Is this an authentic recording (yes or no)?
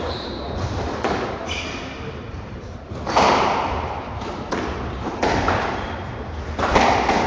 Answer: no